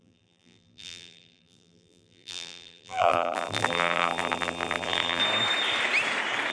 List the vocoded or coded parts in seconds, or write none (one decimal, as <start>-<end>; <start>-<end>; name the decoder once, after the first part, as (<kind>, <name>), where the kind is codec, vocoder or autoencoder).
0.0-5.2 (vocoder, BigVGAN v2)